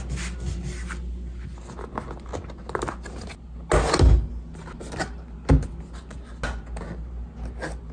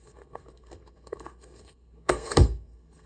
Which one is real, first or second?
first